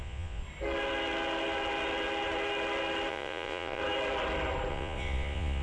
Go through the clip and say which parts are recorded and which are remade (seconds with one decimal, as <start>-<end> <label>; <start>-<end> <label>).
0.0-0.4 remade; 0.4-3.1 recorded; 3.1-3.8 remade; 3.8-4.7 recorded; 4.7-5.6 remade